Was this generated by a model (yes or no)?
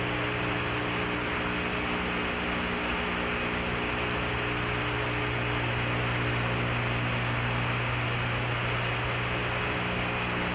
no